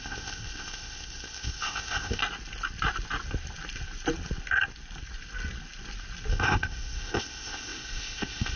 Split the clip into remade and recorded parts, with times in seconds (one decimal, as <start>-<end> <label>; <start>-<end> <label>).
0.0-2.2 remade; 2.2-6.3 recorded; 6.3-8.6 remade